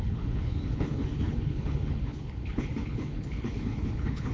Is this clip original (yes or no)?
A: no